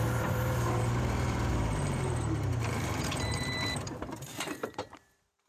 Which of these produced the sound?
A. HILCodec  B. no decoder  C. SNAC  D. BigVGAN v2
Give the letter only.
D